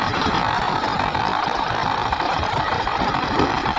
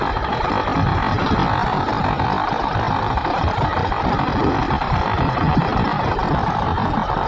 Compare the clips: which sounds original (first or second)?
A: second